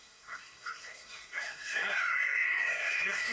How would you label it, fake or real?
fake